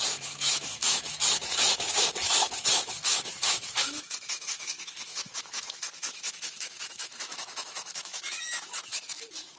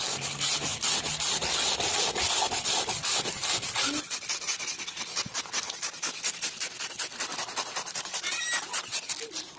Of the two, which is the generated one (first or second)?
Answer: first